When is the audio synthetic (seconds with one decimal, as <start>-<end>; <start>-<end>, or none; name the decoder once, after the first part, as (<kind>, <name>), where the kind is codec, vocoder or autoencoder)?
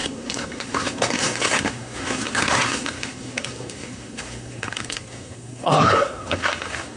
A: 0.0-7.0 (codec, SNAC)